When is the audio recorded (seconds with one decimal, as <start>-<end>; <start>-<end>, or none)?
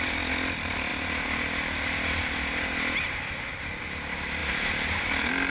0.0-5.5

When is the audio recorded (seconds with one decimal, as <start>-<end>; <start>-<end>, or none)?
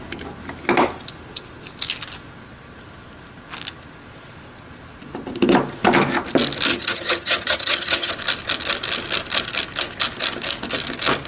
0.0-6.7; 8.1-11.3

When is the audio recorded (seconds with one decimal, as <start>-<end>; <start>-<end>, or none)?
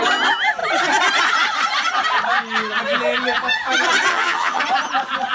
0.0-4.1; 4.6-5.3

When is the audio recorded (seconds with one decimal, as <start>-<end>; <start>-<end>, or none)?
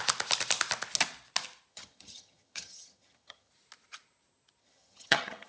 0.0-1.7; 3.5-4.6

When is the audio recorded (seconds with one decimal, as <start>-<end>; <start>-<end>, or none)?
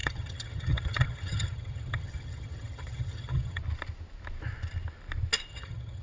3.6-5.5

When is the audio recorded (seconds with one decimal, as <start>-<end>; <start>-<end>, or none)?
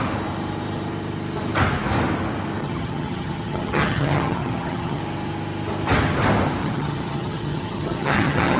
0.0-2.6; 5.0-6.6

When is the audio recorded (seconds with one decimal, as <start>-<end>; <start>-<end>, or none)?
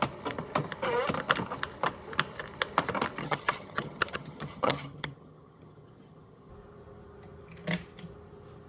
0.0-3.2; 6.5-8.7